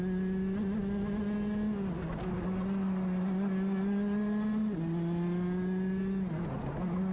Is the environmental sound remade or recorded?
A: recorded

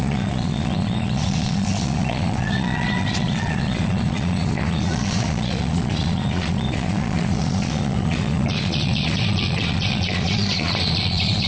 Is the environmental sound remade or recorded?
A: remade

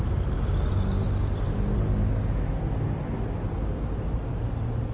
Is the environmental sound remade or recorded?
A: recorded